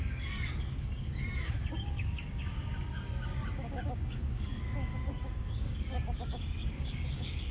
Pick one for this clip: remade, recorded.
remade